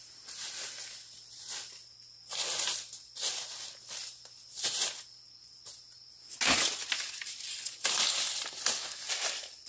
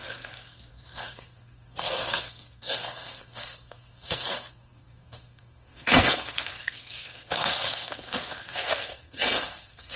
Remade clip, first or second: second